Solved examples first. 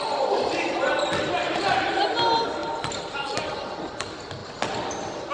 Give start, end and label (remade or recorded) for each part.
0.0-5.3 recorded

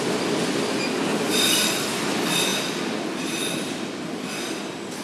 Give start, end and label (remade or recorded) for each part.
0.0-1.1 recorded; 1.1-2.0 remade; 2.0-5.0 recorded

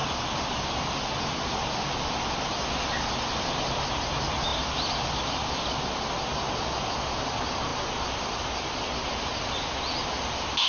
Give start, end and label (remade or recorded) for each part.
0.0-1.2 remade; 1.2-4.5 recorded; 4.5-5.8 remade; 5.8-10.7 recorded

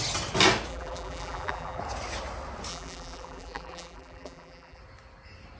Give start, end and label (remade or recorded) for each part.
0.0-0.7 recorded; 0.7-1.8 remade; 1.8-2.7 recorded; 2.7-4.8 remade; 4.8-5.6 recorded

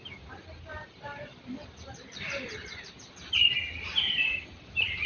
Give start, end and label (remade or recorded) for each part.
0.0-0.7 recorded; 0.7-2.9 remade; 2.9-3.9 recorded; 3.9-4.5 remade; 4.5-5.1 recorded

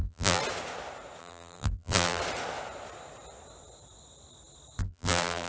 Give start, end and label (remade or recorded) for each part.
0.0-0.4 remade; 0.4-1.2 recorded; 1.2-2.2 remade; 2.2-4.8 recorded; 4.8-5.5 remade